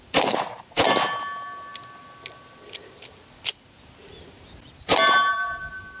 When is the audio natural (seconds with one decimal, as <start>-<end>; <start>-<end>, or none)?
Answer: 0.0-6.0